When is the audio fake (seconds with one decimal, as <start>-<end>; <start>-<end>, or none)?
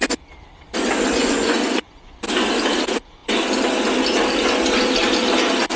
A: 1.2-2.2